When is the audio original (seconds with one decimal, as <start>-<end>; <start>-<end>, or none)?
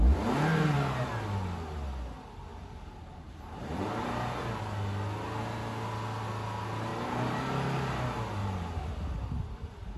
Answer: 0.0-0.5; 1.1-2.5; 4.6-6.9; 8.0-8.4; 9.5-10.0